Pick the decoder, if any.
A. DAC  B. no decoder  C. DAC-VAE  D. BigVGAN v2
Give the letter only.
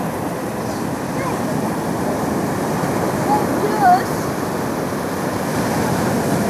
D